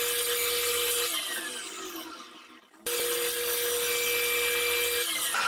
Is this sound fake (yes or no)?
no